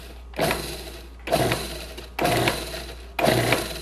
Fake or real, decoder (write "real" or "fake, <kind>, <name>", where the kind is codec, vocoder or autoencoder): real